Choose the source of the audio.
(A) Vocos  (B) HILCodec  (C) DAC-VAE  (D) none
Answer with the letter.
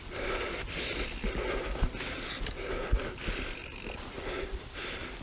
D